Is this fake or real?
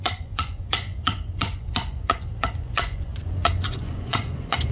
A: fake